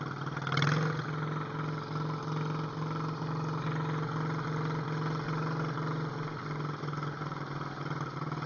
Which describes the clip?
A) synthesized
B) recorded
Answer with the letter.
B